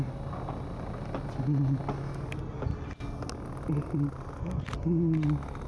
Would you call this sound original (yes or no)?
yes